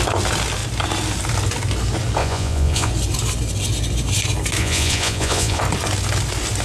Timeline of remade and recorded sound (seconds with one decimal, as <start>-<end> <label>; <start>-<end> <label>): 0.0-2.2 recorded; 2.2-2.9 remade; 2.9-4.6 recorded; 4.6-5.6 remade; 5.6-6.6 recorded